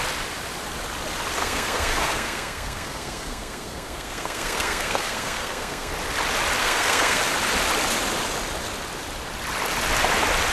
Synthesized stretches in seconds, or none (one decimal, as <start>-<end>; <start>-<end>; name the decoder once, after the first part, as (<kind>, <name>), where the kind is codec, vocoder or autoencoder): 1.4-5.9 (codec, SNAC); 6.6-7.2